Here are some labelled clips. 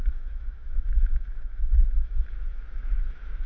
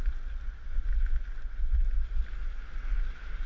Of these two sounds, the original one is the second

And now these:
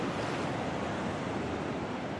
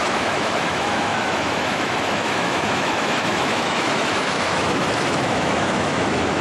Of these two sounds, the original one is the first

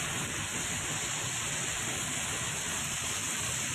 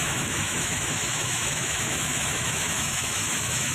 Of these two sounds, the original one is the first